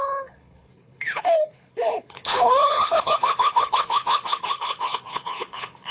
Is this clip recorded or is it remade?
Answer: remade